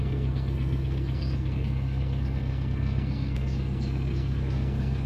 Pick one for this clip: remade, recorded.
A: remade